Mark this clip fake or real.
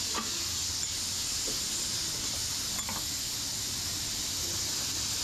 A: real